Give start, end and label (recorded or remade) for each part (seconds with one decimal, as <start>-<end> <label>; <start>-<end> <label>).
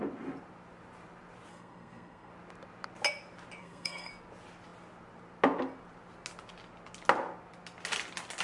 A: 0.0-1.5 recorded; 1.5-2.3 remade; 2.3-3.6 recorded; 3.6-4.1 remade; 4.1-8.4 recorded